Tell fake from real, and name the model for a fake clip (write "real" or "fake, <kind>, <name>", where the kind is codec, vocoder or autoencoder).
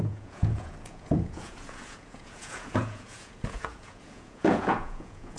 fake, vocoder, Vocos